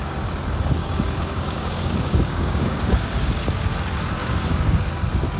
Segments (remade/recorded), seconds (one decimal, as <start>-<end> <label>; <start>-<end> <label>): 0.0-0.8 recorded; 0.8-3.3 remade; 3.3-4.2 recorded; 4.2-4.8 remade; 4.8-5.4 recorded